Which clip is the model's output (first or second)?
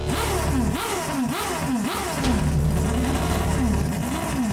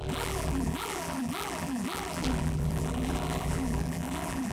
second